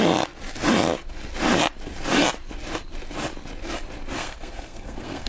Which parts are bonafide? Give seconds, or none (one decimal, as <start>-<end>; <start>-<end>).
0.0-4.2